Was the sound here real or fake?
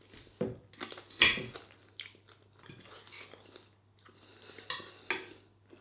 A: real